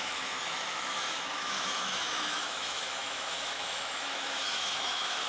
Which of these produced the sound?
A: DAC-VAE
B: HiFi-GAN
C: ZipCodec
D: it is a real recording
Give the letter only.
A